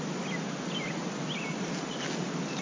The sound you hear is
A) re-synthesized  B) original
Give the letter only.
B